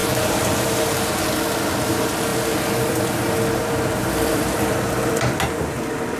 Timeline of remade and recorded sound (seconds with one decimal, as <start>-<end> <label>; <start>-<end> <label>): 0.0-0.7 remade; 0.7-2.3 recorded; 2.3-6.2 remade

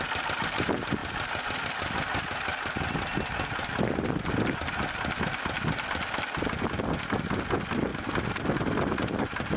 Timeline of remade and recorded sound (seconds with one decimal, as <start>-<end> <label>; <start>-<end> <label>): 0.0-9.6 recorded